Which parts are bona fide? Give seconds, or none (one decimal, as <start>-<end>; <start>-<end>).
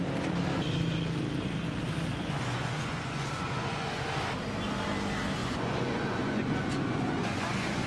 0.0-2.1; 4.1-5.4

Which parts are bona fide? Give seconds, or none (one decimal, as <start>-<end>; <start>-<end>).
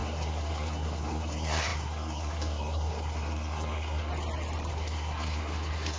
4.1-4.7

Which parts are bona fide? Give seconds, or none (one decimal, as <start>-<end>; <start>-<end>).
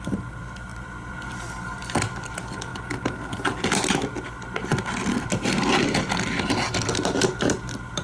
2.7-7.4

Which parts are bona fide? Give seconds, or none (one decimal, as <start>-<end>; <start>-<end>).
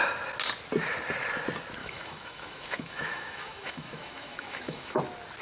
0.0-1.8; 5.0-5.4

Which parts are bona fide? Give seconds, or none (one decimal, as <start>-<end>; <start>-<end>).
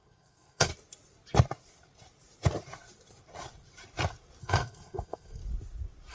0.7-4.4; 5.4-6.1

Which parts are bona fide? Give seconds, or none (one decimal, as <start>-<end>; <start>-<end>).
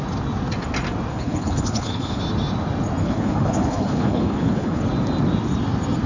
0.0-1.1; 2.2-3.0; 4.8-6.1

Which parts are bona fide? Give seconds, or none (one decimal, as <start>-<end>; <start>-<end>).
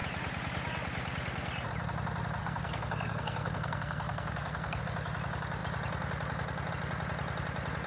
0.0-2.4; 4.8-7.9